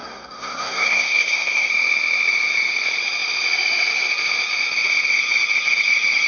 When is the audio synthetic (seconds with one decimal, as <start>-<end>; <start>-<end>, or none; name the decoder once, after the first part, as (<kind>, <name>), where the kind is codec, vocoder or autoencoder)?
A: 0.0-1.7 (codec, SNAC)